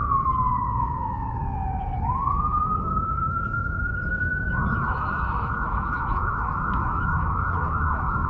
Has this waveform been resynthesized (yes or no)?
yes